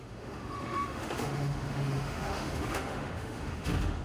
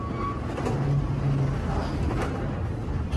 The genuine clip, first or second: second